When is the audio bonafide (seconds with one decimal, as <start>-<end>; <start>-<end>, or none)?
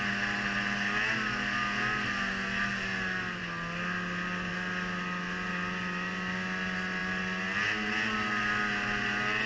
0.0-9.5